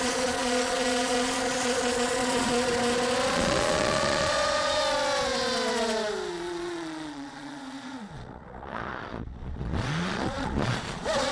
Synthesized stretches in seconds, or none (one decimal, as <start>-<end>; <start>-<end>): 0.0-2.7; 3.3-4.8; 6.3-11.3